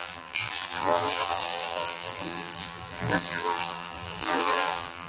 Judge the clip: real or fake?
fake